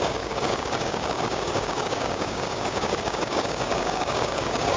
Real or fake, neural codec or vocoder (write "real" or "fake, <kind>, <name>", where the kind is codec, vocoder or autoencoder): fake, codec, DAC